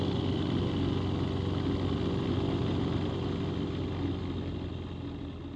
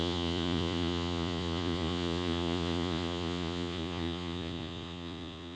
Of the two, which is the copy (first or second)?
second